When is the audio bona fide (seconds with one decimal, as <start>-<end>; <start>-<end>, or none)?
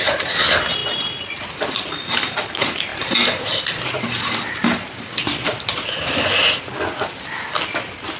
0.0-8.2